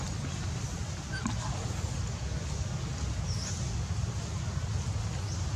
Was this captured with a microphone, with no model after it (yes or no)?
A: yes